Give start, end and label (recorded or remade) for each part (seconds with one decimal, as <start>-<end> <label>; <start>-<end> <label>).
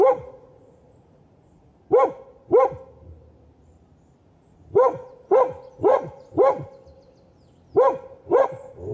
0.0-1.7 remade; 1.7-4.2 recorded; 4.2-6.7 remade; 6.7-8.4 recorded; 8.4-8.9 remade